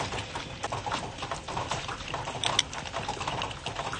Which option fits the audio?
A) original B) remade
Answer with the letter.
A